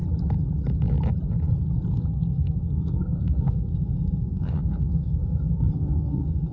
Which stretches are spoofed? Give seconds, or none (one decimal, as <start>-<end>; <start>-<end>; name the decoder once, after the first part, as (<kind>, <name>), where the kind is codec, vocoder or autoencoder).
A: 1.9-6.5 (codec, SNAC)